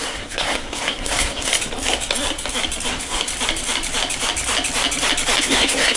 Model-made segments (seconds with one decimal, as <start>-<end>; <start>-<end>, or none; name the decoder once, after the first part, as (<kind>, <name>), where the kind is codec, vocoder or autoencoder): 0.0-1.5 (codec, SNAC); 2.9-3.3; 5.4-6.0